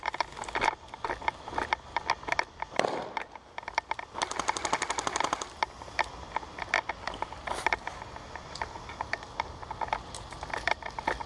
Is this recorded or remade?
recorded